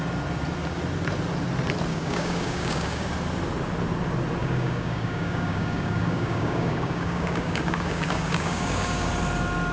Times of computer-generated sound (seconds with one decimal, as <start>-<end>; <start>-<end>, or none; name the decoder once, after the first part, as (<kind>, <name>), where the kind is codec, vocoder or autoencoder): 1.9-3.1 (codec, DAC); 4.4-9.1